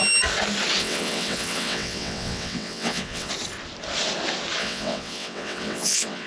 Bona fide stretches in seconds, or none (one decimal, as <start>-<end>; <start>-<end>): 0.0-0.8; 3.3-4.6